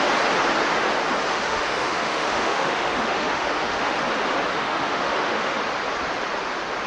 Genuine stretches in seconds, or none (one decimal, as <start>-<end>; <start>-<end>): 0.0-1.3; 4.0-4.5; 5.6-6.9